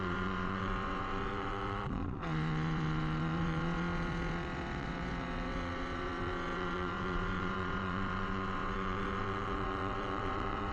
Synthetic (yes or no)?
yes